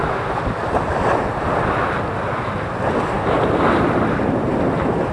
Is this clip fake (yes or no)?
no